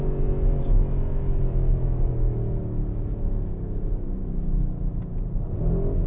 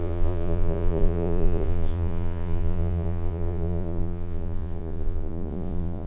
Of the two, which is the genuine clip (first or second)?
first